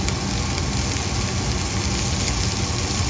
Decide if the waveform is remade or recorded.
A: recorded